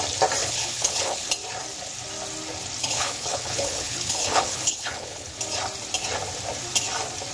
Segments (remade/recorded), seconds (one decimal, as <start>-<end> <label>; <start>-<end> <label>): 0.0-0.4 recorded; 0.4-1.3 remade; 1.3-2.8 recorded; 2.8-5.4 remade; 5.4-7.3 recorded